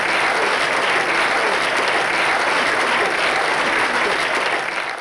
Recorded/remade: recorded